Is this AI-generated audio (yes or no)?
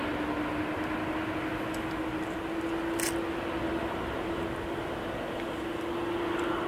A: no